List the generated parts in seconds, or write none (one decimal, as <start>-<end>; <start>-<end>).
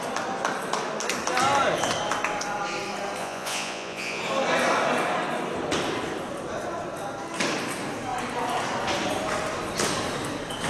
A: 3.2-4.2